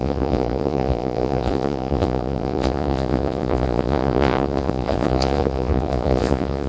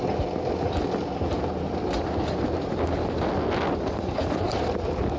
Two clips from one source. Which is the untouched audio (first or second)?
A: second